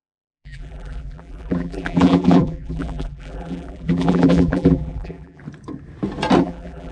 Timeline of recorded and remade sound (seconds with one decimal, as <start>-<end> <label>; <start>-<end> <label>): 0.0-5.4 remade; 5.4-6.4 recorded; 6.4-6.9 remade